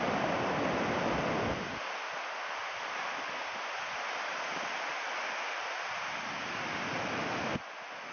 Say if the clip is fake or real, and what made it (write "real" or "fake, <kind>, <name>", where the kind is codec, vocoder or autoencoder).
real